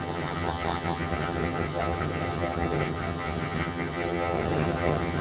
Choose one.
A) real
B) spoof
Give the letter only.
B